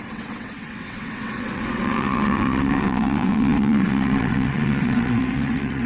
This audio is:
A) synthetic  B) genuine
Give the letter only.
A